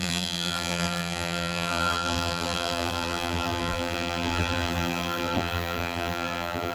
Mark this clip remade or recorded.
remade